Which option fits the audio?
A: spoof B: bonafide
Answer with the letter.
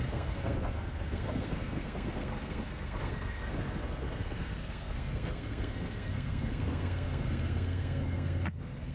A